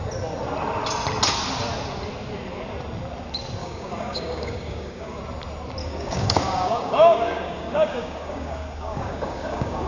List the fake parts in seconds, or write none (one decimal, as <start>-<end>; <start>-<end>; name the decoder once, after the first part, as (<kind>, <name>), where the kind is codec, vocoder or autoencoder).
3.6-5.2 (codec, DAC); 5.8-9.9